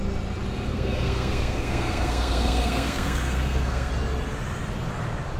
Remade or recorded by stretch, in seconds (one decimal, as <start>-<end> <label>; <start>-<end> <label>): 0.0-0.7 recorded; 0.7-3.9 remade; 3.9-5.4 recorded